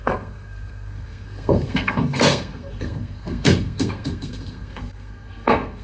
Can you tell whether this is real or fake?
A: fake